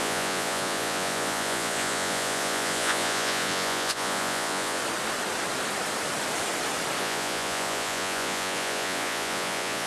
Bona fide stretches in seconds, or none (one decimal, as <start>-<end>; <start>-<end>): 4.8-7.0